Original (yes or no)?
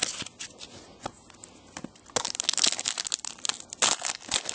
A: yes